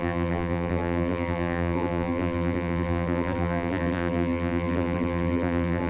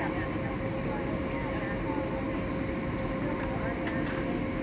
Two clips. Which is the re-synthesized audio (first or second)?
first